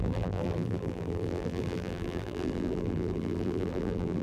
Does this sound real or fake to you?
fake